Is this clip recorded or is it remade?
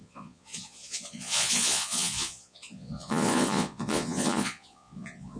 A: remade